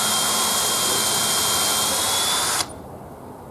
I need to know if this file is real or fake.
real